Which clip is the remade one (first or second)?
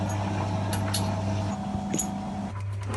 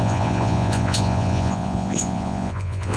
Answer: second